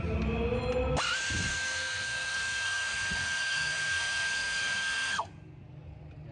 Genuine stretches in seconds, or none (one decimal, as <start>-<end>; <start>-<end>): 0.0-1.5; 5.3-6.3